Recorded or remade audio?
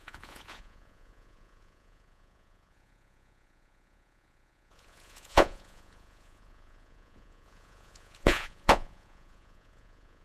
remade